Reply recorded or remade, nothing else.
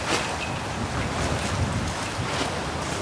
recorded